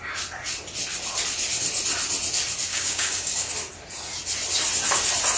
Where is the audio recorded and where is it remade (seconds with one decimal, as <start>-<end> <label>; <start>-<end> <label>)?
0.0-2.7 recorded; 2.7-3.5 remade; 3.5-5.4 recorded